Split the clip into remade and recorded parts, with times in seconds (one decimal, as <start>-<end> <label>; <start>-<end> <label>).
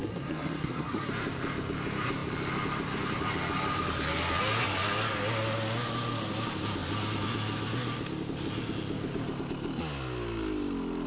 0.0-1.1 remade; 1.1-11.1 recorded